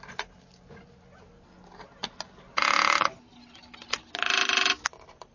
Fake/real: real